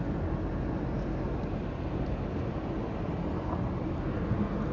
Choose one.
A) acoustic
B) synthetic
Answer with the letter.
A